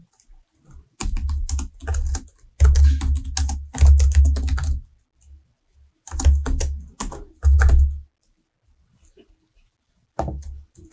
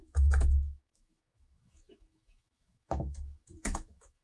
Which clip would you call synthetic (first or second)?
second